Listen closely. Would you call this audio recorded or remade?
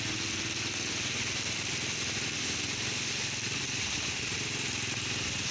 recorded